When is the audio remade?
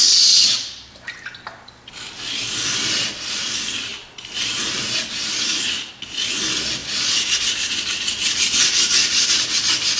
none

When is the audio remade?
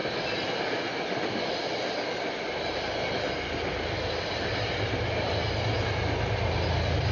none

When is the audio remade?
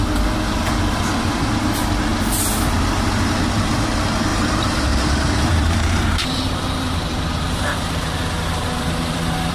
4.3-9.5 (vocoder, BigVGAN v2)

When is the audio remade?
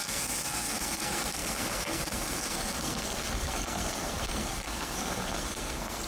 0.0-6.1 (codec, SNAC)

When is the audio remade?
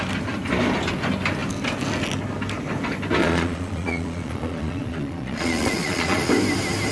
3.2-6.3 (vocoder, Vocos)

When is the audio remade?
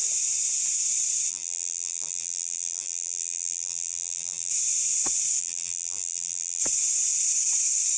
1.3-4.5 (vocoder, BigVGAN v2); 5.4-6.6